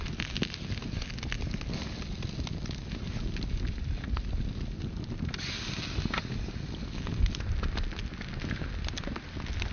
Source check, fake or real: real